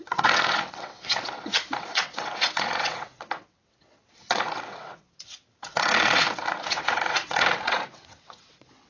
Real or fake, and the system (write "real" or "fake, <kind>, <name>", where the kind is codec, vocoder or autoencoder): fake, vocoder, WaveNeXt